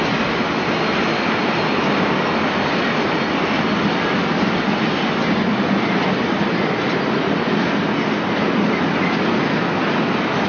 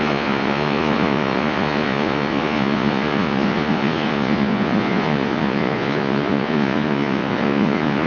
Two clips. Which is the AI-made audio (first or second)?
second